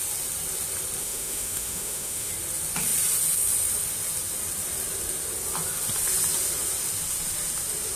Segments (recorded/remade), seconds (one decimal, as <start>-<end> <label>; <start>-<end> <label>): 0.0-1.0 recorded; 1.0-2.3 remade; 2.3-8.0 recorded